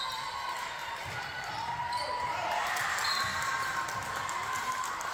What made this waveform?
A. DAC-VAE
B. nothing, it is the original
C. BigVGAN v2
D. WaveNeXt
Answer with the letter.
C